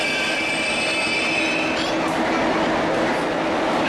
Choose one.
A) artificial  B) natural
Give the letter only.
B